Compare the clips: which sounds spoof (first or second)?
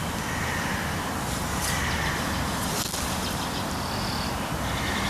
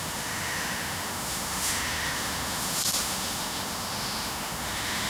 second